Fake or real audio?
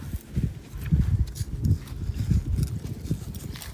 real